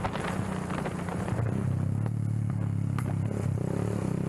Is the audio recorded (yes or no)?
yes